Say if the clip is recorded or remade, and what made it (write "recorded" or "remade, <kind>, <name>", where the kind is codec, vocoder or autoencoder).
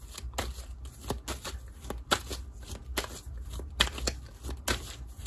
recorded